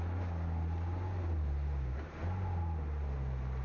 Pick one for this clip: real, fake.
real